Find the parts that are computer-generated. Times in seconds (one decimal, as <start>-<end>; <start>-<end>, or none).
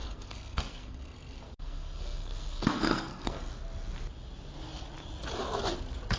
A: 0.0-3.5